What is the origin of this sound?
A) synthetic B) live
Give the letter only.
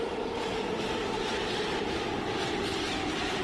B